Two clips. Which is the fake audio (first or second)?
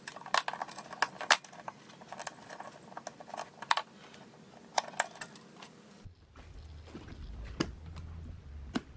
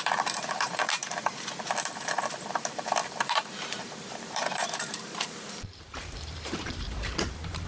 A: second